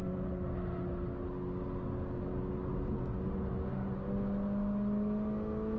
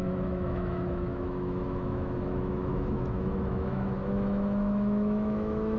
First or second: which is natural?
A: first